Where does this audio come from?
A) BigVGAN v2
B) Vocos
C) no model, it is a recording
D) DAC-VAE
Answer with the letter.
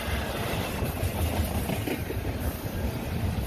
C